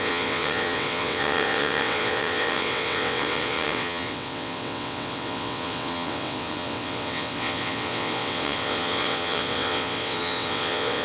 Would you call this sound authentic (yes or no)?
no